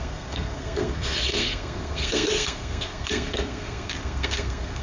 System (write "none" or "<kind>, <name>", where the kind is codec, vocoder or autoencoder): codec, SNAC